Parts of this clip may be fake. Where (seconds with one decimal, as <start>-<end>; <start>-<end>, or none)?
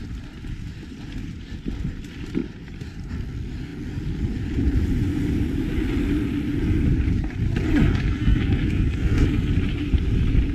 7.8-9.5